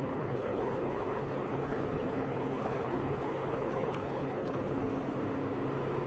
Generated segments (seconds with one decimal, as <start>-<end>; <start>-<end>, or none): 0.0-4.9